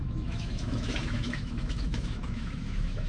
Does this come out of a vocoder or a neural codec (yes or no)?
yes